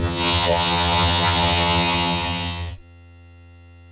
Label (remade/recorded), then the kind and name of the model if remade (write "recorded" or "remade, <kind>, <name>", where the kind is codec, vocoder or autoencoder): remade, vocoder, HiFi-GAN